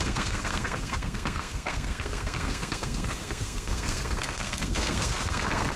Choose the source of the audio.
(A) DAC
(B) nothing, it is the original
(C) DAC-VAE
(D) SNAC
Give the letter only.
D